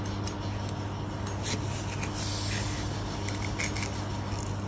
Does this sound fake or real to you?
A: real